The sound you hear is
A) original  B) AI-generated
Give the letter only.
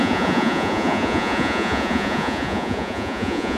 B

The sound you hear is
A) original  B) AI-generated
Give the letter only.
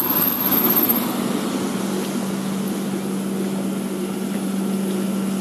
A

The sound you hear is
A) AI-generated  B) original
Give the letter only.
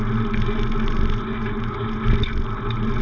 B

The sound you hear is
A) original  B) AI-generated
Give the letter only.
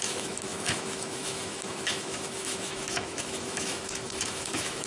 B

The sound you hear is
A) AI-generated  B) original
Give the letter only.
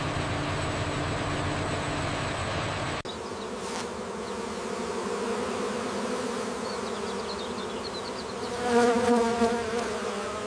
B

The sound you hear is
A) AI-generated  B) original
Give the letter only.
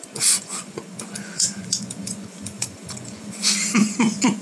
A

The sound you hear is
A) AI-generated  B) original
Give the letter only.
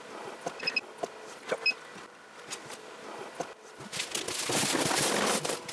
B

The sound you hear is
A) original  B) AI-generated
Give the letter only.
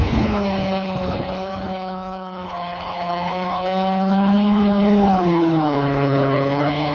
B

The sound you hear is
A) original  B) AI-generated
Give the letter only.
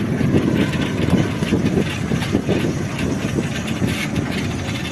A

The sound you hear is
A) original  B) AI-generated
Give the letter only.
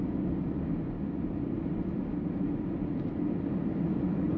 A